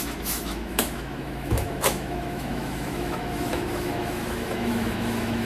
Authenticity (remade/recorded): remade